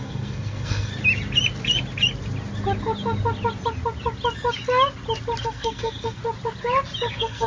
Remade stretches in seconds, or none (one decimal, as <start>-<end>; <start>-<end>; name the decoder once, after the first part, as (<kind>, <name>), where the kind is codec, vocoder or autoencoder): 0.0-0.9 (codec, SNAC); 5.4-6.2; 7.1-7.5

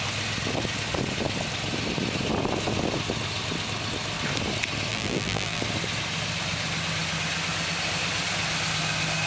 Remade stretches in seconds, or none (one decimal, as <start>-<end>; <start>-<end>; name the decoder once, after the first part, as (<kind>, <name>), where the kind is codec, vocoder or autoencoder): 4.9-5.6 (vocoder, BigVGAN v2)

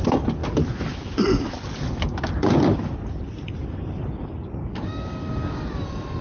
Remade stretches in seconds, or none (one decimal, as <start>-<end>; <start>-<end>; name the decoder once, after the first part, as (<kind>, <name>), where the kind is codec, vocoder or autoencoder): 4.6-5.7 (codec, DAC)

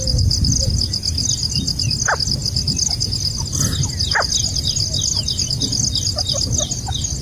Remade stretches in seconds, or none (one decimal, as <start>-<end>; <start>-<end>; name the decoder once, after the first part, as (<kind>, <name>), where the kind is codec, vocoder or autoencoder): none

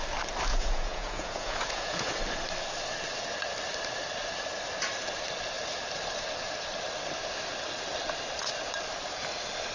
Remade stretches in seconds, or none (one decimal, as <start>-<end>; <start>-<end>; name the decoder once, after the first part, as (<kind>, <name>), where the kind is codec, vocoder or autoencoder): 0.5-2.1 (vocoder, Vocos)

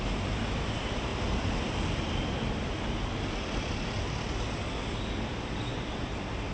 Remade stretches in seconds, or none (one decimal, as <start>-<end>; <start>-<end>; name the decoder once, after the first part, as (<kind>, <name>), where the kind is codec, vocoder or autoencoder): none